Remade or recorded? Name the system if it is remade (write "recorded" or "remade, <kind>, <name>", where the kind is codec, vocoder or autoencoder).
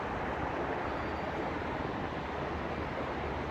recorded